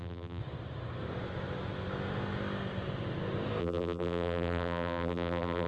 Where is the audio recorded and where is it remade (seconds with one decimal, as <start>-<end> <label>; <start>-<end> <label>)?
0.0-0.4 remade; 0.4-3.6 recorded; 3.6-5.7 remade